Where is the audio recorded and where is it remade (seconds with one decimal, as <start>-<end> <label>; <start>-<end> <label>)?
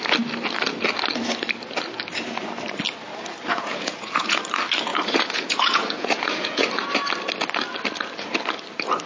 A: 0.0-3.5 recorded; 3.5-4.4 remade; 4.4-4.9 recorded; 4.9-6.6 remade; 6.6-9.1 recorded